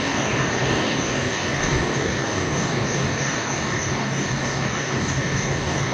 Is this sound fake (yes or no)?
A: yes